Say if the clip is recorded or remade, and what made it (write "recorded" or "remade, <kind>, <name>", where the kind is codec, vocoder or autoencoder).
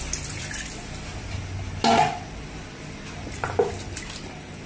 recorded